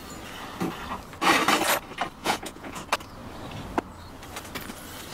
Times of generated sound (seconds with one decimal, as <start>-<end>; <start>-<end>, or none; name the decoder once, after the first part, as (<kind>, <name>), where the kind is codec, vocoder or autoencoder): 2.2-2.8 (vocoder, Vocos)